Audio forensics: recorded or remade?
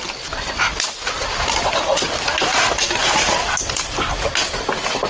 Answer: recorded